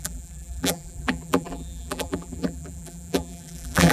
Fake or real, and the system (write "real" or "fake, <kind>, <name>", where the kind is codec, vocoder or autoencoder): fake, vocoder, BigVGAN v2